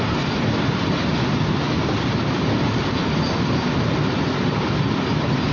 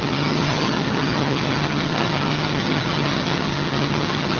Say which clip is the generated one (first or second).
second